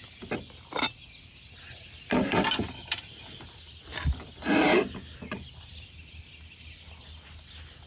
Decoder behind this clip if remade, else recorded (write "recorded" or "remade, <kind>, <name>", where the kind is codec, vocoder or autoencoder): recorded